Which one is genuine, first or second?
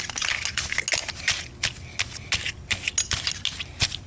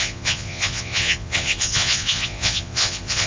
first